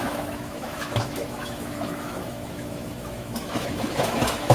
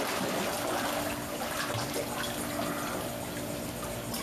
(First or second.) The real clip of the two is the second